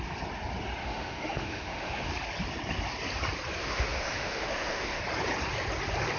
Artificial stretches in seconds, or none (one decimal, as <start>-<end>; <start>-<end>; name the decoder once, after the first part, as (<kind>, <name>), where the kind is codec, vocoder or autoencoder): 0.8-2.1 (autoencoder, DAC-VAE); 3.6-5.0